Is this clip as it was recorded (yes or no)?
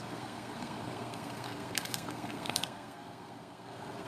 no